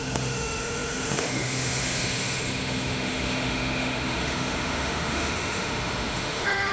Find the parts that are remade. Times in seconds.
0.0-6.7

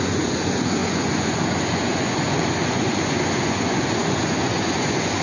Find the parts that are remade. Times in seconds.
0.0-5.2

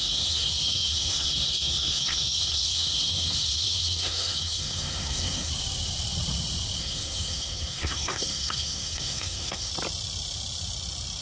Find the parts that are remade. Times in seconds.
0.0-5.5; 6.8-9.7

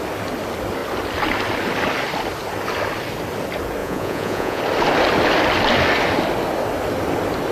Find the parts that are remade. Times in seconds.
3.8-4.6

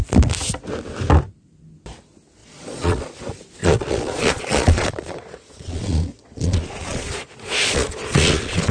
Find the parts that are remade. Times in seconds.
2.4-3.1; 3.6-8.7

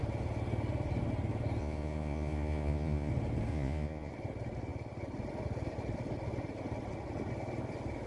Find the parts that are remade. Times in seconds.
1.6-3.1; 3.5-4.1

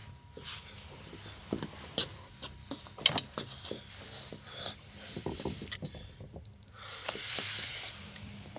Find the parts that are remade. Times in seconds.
3.7-8.6